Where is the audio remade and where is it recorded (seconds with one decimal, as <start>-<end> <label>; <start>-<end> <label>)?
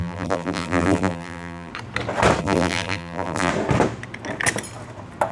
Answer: 0.0-1.7 remade; 1.7-2.4 recorded; 2.4-3.5 remade; 3.5-5.3 recorded